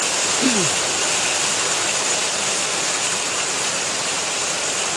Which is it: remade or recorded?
remade